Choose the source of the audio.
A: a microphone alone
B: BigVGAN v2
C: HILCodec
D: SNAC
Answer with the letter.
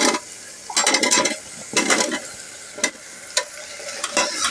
A